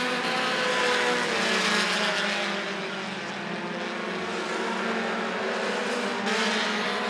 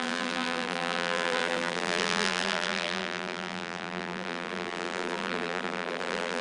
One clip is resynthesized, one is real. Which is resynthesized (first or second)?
second